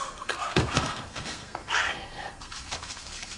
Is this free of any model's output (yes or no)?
no